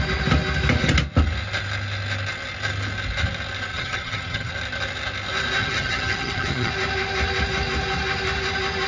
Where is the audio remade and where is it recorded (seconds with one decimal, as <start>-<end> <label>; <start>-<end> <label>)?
0.0-3.7 recorded; 3.7-4.5 remade; 4.5-5.6 recorded; 5.6-6.7 remade; 6.7-8.9 recorded